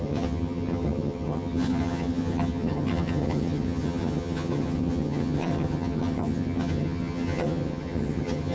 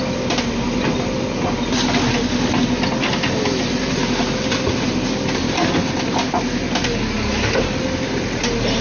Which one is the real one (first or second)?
second